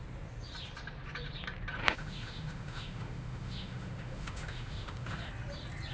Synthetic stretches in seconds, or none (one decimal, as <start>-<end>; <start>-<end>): 1.8-5.3